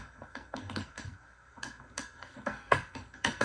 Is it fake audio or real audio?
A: fake